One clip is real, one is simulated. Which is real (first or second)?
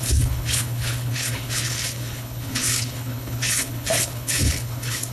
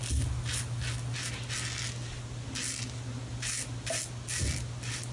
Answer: second